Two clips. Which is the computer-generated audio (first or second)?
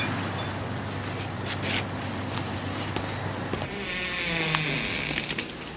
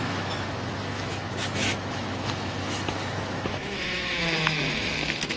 second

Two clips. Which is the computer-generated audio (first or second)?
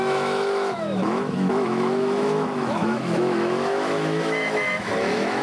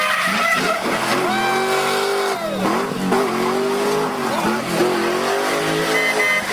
first